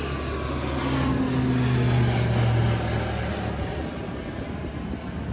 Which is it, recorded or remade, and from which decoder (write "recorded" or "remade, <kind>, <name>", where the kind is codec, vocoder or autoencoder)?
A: recorded